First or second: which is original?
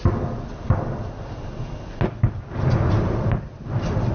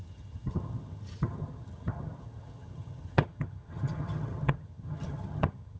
first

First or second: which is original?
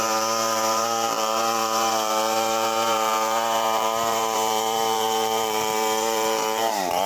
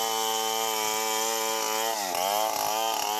second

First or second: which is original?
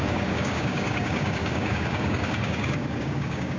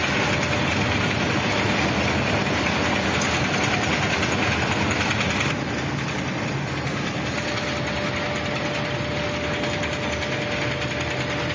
second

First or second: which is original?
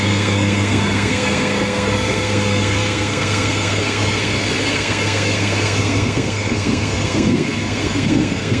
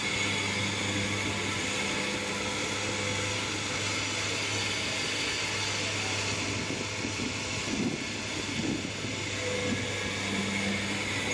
second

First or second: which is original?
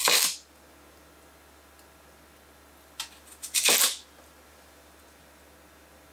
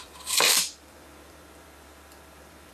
first